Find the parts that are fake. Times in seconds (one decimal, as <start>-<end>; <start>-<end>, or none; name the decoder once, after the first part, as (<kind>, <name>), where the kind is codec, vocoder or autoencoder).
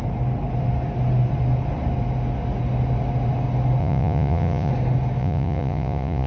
3.8-4.7 (vocoder, Vocos); 5.2-6.3